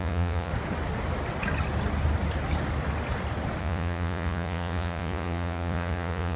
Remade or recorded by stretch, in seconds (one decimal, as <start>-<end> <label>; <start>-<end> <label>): 0.0-0.5 remade; 0.5-3.6 recorded; 3.6-6.4 remade